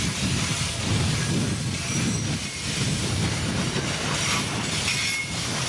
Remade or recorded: recorded